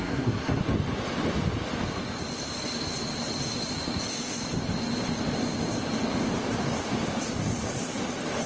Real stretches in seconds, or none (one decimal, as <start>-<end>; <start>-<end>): 0.6-8.5